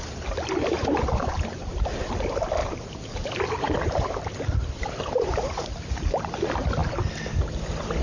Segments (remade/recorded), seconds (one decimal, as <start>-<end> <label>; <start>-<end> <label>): 0.0-1.2 recorded; 1.2-2.1 remade; 2.1-2.6 recorded; 2.6-6.2 remade; 6.2-8.0 recorded